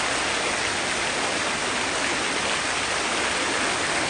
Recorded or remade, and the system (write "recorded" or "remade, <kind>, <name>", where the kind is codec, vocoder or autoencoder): recorded